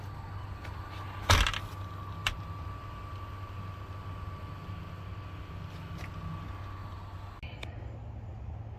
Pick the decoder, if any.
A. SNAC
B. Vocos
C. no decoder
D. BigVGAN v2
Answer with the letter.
C